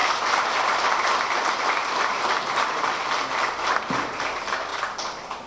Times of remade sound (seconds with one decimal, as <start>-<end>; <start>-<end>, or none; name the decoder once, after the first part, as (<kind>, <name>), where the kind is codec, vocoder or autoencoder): none

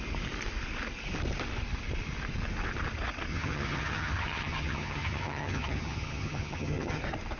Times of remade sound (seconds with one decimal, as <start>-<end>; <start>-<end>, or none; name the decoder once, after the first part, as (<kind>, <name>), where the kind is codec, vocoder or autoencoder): 3.3-7.0 (vocoder, HiFi-GAN)

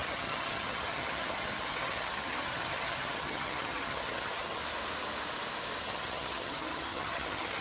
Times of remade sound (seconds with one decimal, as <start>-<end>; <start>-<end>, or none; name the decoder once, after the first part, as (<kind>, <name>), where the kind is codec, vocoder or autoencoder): 0.0-4.6 (vocoder, HiFi-GAN); 5.8-7.6

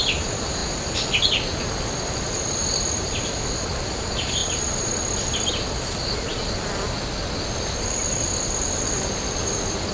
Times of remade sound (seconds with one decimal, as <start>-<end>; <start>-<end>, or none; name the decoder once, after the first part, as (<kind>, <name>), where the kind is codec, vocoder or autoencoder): none

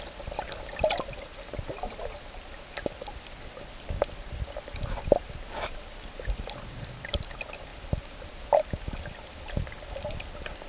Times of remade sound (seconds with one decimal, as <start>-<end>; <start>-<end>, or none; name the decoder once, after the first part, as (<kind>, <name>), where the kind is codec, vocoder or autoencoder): none

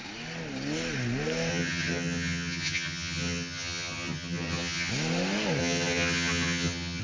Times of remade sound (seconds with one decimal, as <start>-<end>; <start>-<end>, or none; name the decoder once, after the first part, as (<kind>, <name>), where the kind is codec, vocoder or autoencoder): 1.5-4.9 (vocoder, HiFi-GAN); 5.6-7.0

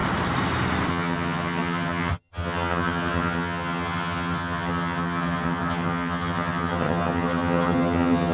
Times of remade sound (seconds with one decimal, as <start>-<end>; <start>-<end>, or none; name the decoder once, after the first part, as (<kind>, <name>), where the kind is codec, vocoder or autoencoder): 0.9-8.3 (vocoder, HiFi-GAN)

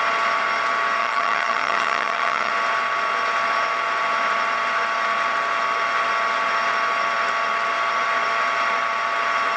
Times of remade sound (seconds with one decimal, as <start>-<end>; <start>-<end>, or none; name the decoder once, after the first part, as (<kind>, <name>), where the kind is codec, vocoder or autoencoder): 1.0-2.5 (vocoder, HiFi-GAN)